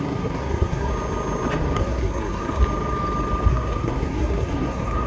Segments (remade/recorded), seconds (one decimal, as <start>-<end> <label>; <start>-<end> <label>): 0.0-0.9 remade; 0.9-1.5 recorded; 1.5-2.6 remade; 2.6-3.5 recorded; 3.5-5.1 remade